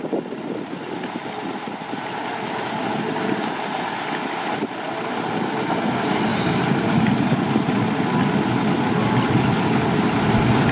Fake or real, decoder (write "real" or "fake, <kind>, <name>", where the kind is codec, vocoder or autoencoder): real